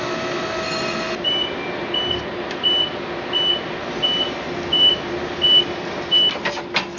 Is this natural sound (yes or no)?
yes